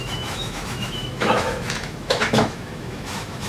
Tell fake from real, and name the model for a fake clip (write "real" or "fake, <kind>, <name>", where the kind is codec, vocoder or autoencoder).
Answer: fake, autoencoder, DAC-VAE